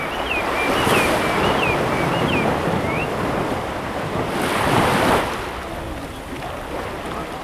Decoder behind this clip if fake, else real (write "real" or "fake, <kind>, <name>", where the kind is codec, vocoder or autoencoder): real